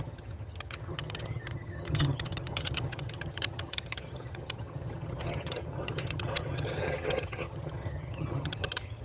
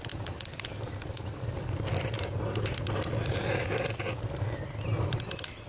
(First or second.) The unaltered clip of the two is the second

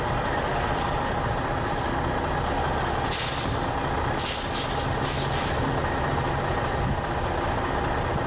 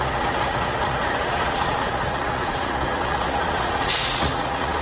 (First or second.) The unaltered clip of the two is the first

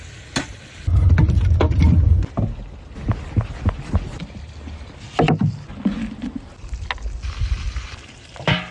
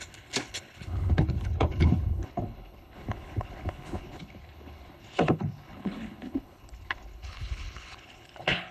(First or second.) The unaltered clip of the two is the first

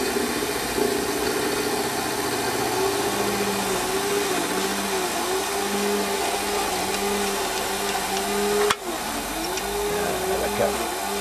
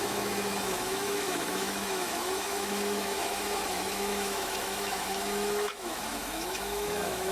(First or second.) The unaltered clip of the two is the first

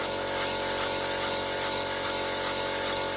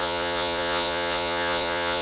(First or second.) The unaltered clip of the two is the first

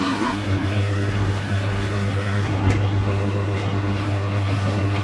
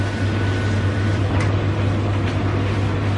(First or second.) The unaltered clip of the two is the second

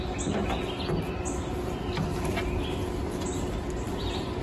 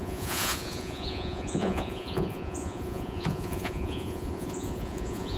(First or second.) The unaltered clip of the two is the first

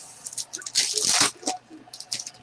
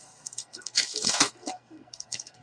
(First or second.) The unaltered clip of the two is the first